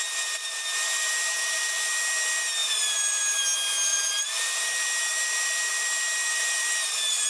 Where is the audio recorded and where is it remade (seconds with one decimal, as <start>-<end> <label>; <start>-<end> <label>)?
0.0-2.6 recorded; 2.6-3.2 remade; 3.2-3.9 recorded; 3.9-4.6 remade; 4.6-6.3 recorded; 6.3-7.3 remade